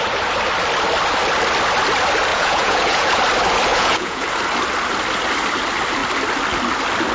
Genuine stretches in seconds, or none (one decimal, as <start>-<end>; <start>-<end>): 0.0-2.3; 3.2-3.7; 4.3-7.1